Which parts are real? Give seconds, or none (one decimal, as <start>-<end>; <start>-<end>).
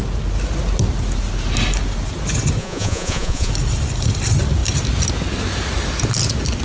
0.0-2.6; 3.5-6.6